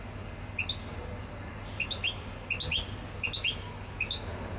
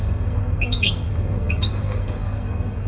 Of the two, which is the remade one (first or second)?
second